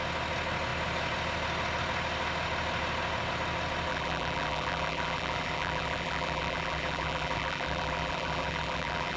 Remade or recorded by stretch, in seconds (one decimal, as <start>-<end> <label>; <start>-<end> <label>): 0.0-3.9 recorded; 3.9-9.2 remade

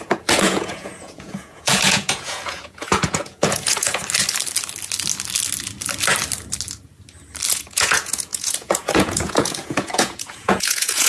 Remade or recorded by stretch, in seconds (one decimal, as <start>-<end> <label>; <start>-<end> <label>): 0.0-4.0 remade; 4.0-7.5 recorded; 7.5-11.1 remade

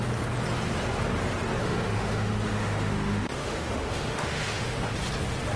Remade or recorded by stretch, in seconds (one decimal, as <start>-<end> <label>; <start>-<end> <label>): 0.0-1.6 recorded; 1.6-4.9 remade; 4.9-5.6 recorded

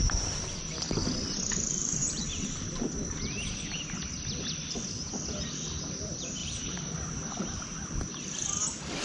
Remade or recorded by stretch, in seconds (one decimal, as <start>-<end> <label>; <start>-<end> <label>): 0.0-2.0 recorded; 2.0-2.7 remade; 2.7-6.4 recorded; 6.4-7.4 remade; 7.4-9.0 recorded

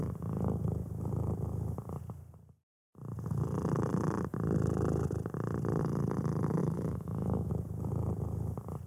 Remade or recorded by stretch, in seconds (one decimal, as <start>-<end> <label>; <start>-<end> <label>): 0.0-6.6 recorded; 6.6-7.5 remade; 7.5-8.9 recorded

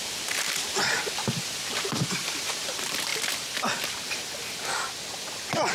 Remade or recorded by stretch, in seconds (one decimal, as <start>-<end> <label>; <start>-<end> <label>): 0.0-3.1 remade; 3.1-5.7 recorded